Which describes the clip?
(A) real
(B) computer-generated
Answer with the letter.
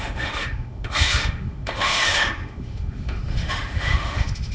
B